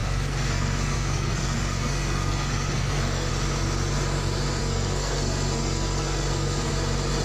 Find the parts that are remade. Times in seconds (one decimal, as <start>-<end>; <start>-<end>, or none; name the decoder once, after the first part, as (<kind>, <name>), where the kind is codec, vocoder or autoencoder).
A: 0.0-3.3 (codec, SNAC); 4.6-6.7